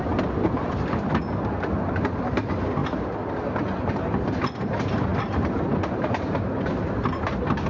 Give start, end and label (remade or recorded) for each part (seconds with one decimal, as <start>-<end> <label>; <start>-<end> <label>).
0.0-7.7 recorded